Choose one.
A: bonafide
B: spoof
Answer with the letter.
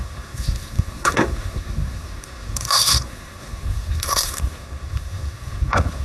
B